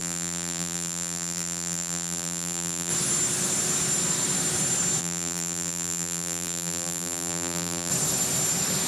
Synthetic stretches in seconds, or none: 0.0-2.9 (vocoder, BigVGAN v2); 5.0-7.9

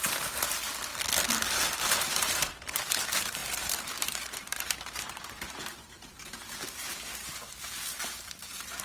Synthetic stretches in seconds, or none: 0.0-0.9 (vocoder, BigVGAN v2); 1.5-8.8

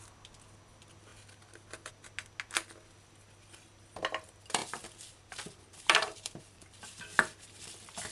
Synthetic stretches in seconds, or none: 4.6-7.0 (vocoder, BigVGAN v2)